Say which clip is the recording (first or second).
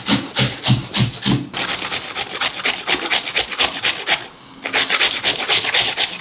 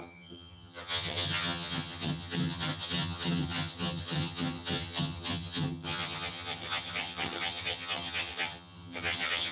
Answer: first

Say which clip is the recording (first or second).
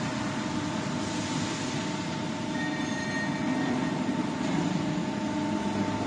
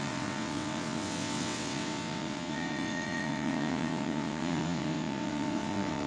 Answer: first